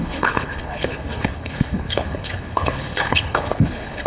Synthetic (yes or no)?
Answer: yes